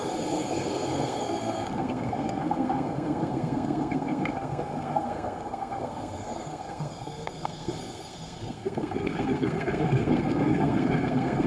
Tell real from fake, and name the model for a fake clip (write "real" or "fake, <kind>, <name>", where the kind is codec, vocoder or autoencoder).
fake, codec, SNAC